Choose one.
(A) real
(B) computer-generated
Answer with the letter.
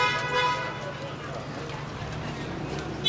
A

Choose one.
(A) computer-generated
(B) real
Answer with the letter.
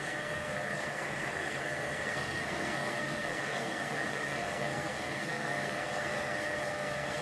A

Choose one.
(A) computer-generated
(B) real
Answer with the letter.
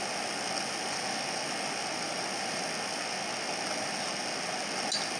B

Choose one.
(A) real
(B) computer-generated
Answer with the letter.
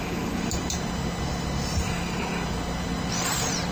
A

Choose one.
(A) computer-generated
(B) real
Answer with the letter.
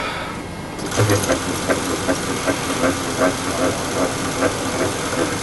B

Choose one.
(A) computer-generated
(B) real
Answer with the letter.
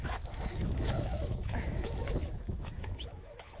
A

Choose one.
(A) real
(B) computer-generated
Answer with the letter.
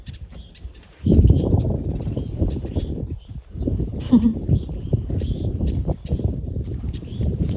B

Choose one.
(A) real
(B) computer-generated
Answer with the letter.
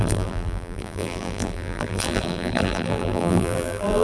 B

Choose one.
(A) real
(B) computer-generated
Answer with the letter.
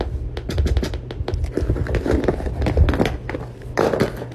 A